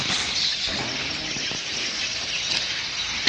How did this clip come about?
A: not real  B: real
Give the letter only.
B